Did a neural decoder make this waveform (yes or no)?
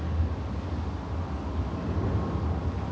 no